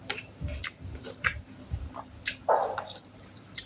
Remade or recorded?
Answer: remade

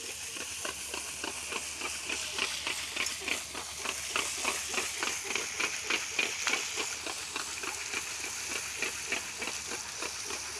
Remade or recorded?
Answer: recorded